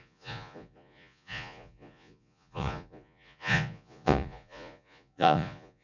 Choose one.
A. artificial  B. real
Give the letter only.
A